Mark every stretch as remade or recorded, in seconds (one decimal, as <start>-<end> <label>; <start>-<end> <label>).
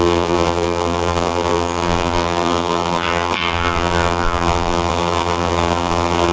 0.0-6.3 remade